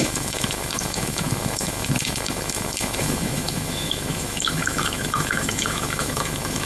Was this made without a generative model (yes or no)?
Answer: no